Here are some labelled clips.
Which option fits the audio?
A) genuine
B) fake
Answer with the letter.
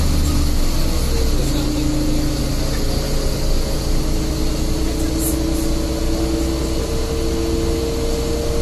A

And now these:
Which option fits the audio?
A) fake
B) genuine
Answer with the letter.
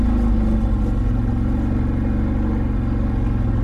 B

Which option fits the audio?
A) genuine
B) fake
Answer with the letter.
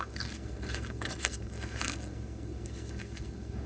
B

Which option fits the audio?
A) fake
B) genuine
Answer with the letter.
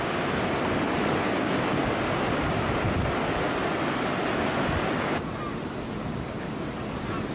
B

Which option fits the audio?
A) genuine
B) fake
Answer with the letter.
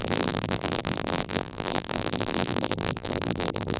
B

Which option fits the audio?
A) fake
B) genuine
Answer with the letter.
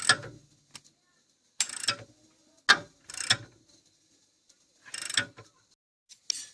B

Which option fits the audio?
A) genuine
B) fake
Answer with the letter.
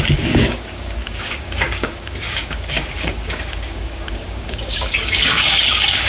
B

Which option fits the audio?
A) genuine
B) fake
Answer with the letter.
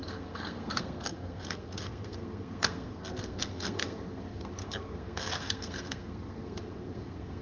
B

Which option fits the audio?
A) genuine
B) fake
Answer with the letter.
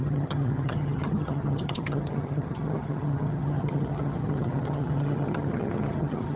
B